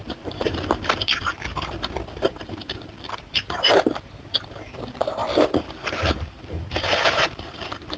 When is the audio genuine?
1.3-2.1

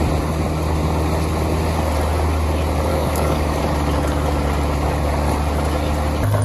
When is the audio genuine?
0.0-2.9; 3.6-6.4

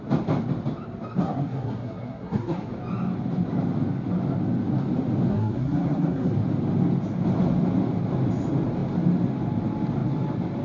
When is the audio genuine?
0.0-1.2; 2.7-5.3; 6.3-10.6

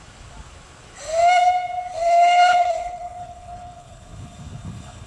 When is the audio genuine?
0.0-1.9

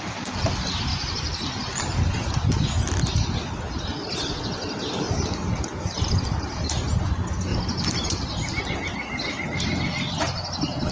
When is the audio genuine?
0.0-0.9; 2.3-10.9